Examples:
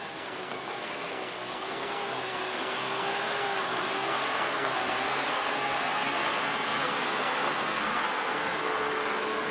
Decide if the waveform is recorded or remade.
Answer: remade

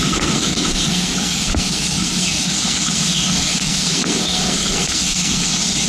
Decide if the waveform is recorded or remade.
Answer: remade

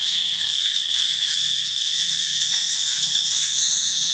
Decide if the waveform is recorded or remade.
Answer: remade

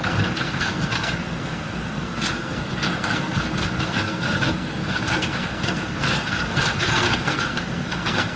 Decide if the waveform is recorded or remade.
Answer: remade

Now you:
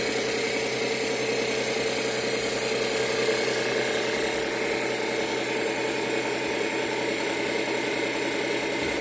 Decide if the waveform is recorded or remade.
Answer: recorded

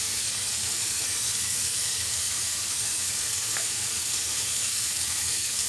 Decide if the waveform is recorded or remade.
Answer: remade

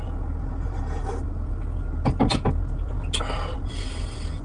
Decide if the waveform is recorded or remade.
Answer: recorded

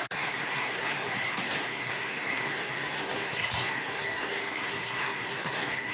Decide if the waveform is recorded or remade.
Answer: remade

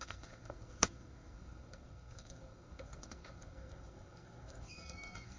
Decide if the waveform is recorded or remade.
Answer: remade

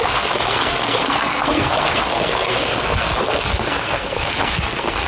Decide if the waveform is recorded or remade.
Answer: remade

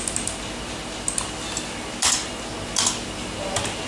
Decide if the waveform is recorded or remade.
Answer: recorded